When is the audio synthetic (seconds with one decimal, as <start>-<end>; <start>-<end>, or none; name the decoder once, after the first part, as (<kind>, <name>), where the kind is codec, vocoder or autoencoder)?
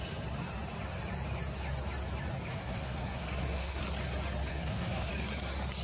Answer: 2.5-3.8 (codec, SNAC); 4.5-5.1